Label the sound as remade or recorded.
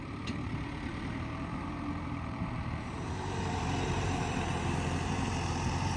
remade